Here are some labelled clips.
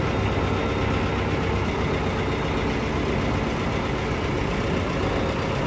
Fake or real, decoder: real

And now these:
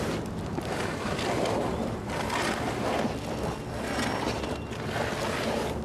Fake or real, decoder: real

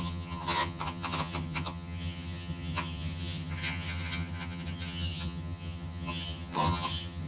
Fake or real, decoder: fake, vocoder, HiFi-GAN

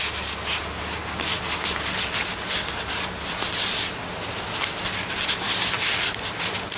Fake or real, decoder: real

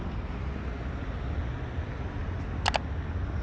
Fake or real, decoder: real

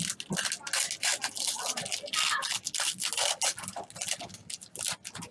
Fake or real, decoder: real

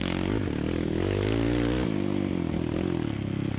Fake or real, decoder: real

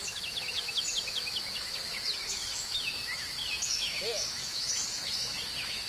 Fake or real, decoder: fake, autoencoder, DAC-VAE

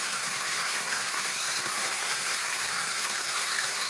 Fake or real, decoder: fake, codec, SNAC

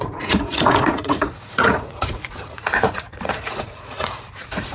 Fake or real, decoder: fake, vocoder, Vocos